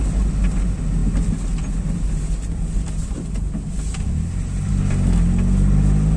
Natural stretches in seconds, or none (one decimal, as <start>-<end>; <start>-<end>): 0.0-6.2